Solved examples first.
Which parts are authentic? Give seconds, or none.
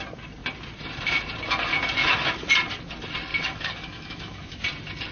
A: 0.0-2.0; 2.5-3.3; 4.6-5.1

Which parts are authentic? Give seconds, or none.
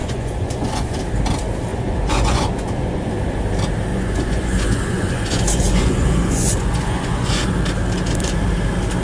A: 1.0-1.7; 3.2-3.9; 7.6-9.0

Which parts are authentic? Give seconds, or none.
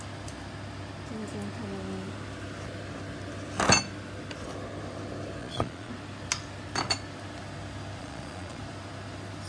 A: 0.0-5.4; 5.9-8.0; 8.6-9.5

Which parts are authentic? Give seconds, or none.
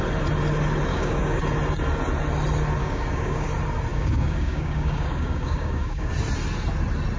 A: 0.0-0.9; 1.4-2.8; 3.5-3.9; 6.1-7.2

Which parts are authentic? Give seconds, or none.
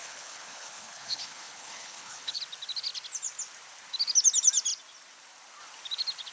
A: 2.4-6.3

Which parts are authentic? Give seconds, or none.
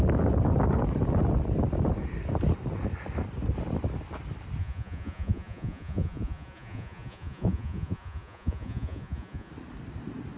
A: 0.0-4.6; 9.5-10.4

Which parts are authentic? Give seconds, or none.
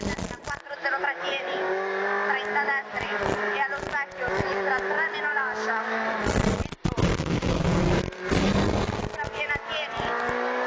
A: 0.0-5.3; 5.8-7.1; 7.8-10.7